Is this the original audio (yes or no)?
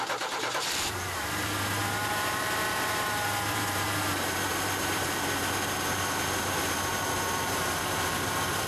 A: no